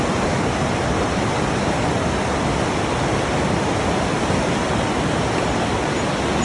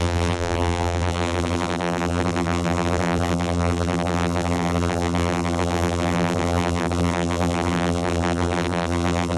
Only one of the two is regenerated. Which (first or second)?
second